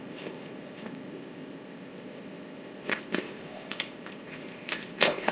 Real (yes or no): no